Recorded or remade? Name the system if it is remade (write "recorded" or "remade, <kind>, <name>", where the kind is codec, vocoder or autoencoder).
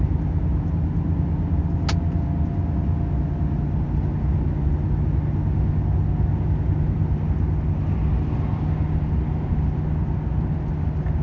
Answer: recorded